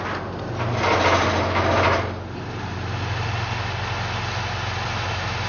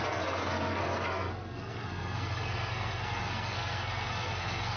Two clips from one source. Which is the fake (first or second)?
second